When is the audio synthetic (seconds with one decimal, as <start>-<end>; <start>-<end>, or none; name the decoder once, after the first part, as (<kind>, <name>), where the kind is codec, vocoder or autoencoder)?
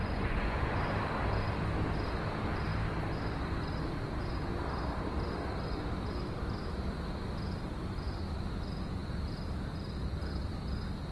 0.0-0.8 (vocoder, Vocos)